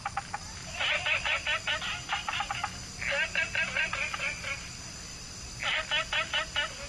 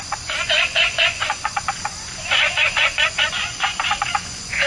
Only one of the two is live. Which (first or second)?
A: first